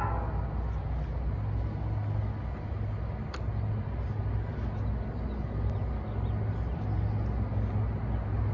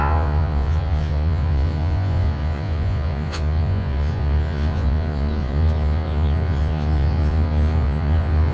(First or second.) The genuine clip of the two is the first